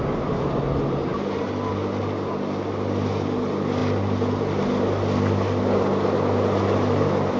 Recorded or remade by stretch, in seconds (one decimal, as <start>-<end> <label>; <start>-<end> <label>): 0.0-7.4 recorded